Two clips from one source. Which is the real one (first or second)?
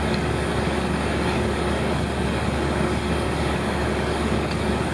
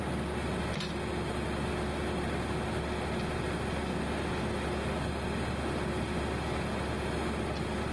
second